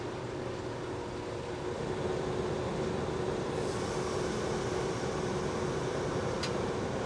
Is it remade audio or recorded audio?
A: recorded